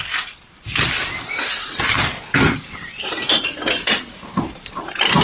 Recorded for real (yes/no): yes